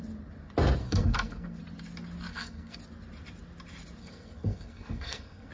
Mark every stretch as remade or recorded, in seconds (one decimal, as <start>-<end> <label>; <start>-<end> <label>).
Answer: 0.0-0.8 recorded; 0.8-1.6 remade; 1.6-2.3 recorded; 2.3-2.8 remade; 2.8-4.0 recorded; 4.0-5.5 remade